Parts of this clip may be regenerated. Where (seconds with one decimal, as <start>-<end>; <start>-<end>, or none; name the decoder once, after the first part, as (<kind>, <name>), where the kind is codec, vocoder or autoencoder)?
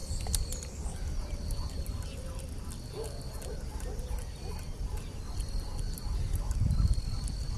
none